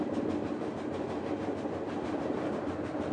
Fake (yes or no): no